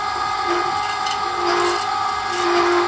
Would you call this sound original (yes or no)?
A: yes